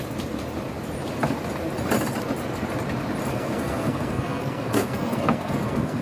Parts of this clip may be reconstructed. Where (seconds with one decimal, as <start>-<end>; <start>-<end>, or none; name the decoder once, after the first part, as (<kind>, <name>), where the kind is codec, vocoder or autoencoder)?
3.3-6.0 (codec, SNAC)